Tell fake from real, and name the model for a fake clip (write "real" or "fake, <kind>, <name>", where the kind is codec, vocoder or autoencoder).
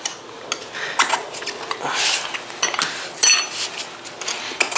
real